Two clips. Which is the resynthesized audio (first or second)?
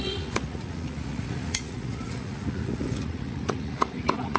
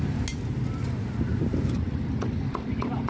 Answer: first